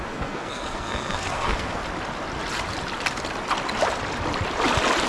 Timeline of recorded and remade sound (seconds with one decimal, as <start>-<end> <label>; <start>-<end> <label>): 0.0-1.8 remade; 1.8-5.1 recorded